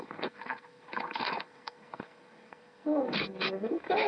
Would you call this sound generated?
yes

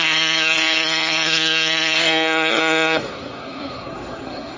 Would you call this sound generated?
yes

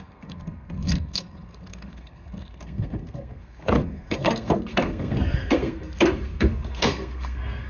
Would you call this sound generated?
yes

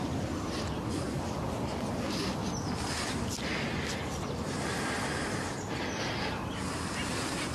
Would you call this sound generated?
no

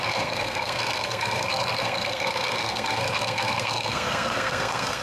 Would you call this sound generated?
yes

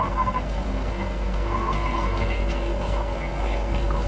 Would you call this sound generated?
yes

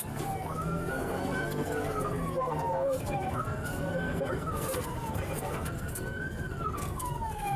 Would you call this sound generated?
yes